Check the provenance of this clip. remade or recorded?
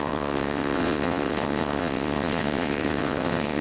remade